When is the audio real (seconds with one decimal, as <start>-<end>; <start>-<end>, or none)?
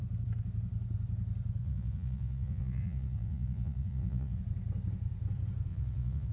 0.0-1.6; 4.4-5.7